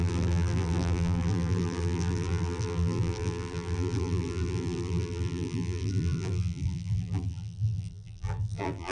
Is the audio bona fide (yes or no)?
no